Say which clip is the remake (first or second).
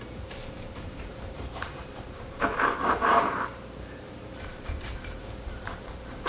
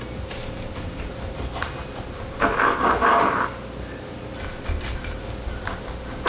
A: first